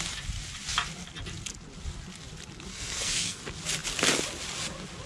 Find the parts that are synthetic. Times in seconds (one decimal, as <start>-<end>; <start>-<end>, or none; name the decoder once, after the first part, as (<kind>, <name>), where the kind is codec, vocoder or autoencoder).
2.7-3.4 (codec, SNAC)